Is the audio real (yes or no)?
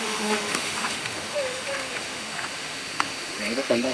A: no